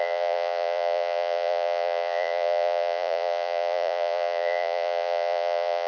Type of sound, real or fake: fake